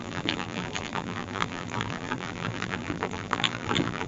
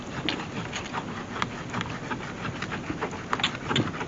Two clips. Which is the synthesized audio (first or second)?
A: first